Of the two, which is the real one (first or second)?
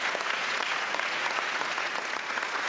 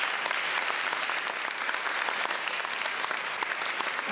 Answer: second